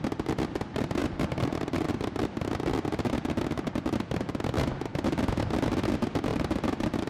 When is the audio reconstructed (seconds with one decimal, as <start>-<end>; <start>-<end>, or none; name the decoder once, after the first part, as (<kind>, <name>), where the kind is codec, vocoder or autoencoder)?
1.0-2.2 (vocoder, BigVGAN v2)